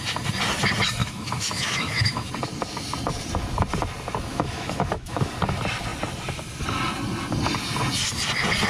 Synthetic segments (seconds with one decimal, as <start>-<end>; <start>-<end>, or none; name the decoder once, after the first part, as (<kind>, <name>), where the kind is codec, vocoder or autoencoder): 1.0-2.3 (autoencoder, DAC-VAE); 4.3-5.3